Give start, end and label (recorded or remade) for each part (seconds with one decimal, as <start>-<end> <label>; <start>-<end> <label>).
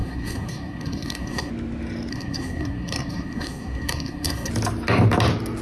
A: 0.0-1.5 remade; 1.5-2.1 recorded; 2.1-4.5 remade; 4.5-5.6 recorded